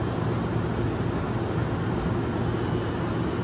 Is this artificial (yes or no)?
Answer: no